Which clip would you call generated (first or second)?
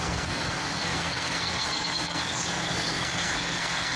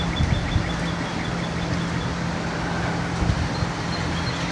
first